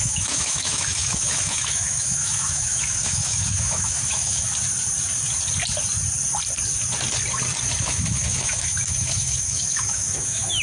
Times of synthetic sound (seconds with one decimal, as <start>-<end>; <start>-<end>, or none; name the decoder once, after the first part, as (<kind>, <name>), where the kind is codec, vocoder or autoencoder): 0.0-4.5 (autoencoder, DAC-VAE); 7.8-10.6